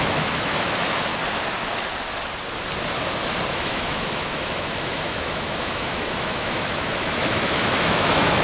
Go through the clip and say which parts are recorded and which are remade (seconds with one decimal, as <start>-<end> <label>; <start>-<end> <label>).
0.0-1.1 remade; 1.1-3.5 recorded; 3.5-8.4 remade